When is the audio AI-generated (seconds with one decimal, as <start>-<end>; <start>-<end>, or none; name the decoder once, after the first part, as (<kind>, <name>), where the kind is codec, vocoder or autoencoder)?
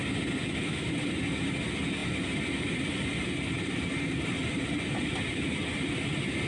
0.4-0.9 (autoencoder, DAC-VAE)